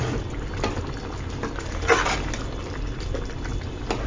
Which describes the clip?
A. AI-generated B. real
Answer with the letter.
B